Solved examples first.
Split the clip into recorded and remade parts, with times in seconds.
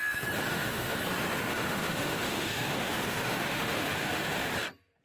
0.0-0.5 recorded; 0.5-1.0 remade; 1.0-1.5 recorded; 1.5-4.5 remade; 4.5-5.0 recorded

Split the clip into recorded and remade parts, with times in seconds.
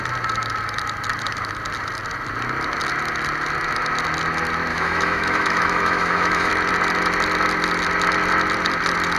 0.0-4.7 recorded; 4.7-6.5 remade; 6.5-9.2 recorded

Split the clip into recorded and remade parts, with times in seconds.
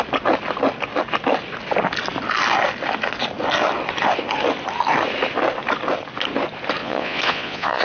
0.0-6.8 recorded; 6.8-7.8 remade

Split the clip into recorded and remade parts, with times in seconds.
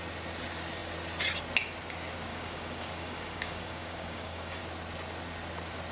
0.0-2.3 recorded; 2.3-4.6 remade; 4.6-5.9 recorded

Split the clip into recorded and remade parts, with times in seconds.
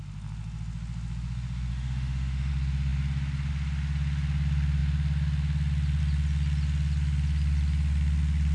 0.0-1.7 recorded; 1.7-2.5 remade; 2.5-8.5 recorded